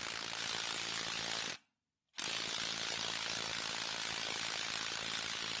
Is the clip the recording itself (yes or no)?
yes